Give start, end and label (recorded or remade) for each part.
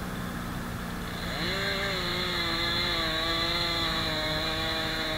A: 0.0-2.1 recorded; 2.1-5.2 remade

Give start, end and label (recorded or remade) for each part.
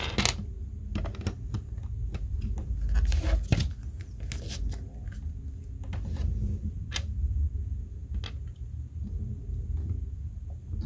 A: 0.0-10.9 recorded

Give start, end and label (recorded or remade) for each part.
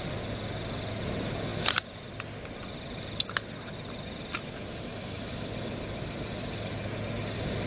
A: 0.0-7.7 recorded